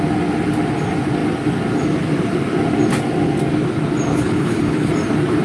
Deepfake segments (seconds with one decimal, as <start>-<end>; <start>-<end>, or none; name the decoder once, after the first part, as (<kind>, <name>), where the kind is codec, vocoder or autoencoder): 4.1-4.9 (codec, HILCodec)